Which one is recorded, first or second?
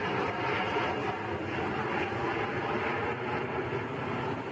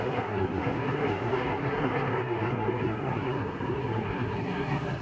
first